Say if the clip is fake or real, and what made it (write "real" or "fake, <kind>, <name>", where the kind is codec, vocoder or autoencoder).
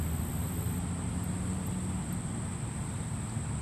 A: real